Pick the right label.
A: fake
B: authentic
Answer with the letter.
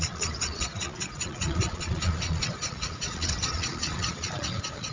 A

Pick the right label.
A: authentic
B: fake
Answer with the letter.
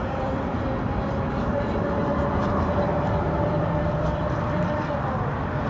B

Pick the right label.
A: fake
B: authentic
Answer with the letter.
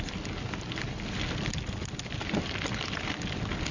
B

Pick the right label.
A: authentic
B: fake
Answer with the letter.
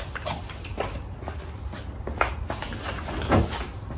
A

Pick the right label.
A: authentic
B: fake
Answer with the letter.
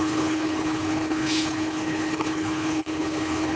B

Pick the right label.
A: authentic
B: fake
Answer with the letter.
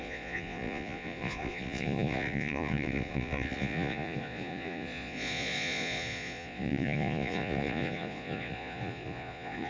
B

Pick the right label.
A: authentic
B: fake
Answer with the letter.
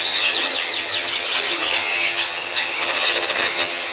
B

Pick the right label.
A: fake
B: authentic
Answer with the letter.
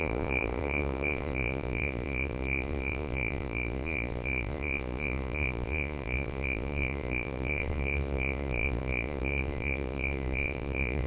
A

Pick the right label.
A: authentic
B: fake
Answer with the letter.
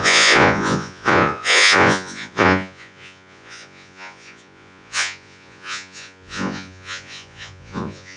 B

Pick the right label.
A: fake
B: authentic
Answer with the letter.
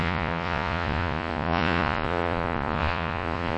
A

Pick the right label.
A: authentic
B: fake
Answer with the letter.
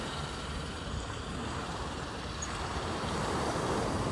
B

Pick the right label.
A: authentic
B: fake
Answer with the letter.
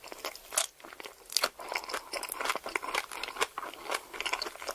A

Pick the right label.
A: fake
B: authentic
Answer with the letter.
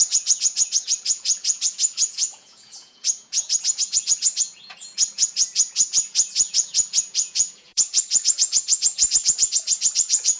A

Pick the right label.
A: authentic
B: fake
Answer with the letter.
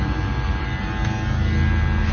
A